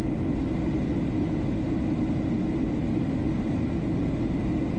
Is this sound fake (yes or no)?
no